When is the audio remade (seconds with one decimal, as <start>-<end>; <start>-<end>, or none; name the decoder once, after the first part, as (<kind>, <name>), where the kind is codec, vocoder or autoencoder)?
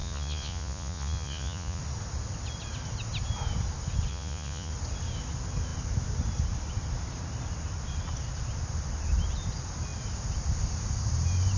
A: 0.0-1.8 (vocoder, Vocos); 4.1-4.7